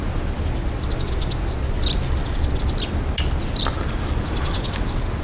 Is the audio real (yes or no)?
yes